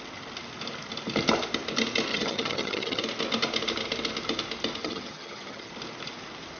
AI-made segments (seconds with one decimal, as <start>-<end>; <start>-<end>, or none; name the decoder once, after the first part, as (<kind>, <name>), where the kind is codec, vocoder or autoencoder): 2.1-3.0 (vocoder, HiFi-GAN); 4.8-5.7